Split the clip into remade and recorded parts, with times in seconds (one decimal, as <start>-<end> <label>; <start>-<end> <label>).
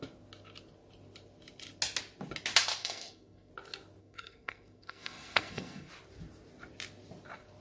0.0-2.8 recorded; 2.8-3.5 remade; 3.5-4.0 recorded; 4.0-5.9 remade; 5.9-7.6 recorded